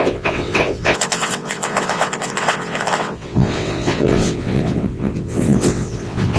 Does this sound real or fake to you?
fake